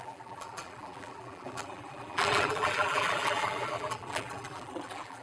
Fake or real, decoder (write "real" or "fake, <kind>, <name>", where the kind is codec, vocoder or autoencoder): fake, vocoder, BigVGAN v2